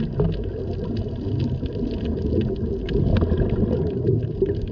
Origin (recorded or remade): recorded